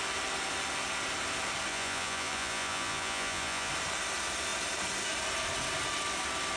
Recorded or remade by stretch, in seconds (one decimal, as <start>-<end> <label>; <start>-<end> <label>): 0.0-1.7 recorded; 1.7-3.7 remade; 3.7-6.6 recorded